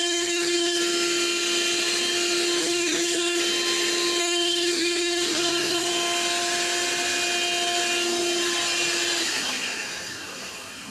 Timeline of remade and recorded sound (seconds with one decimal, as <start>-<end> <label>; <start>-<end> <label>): 0.0-0.8 remade; 0.8-2.6 recorded; 2.6-3.4 remade; 3.4-4.2 recorded; 4.2-5.9 remade; 5.9-9.2 recorded; 9.2-10.9 remade